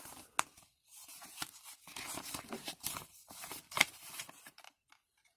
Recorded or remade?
remade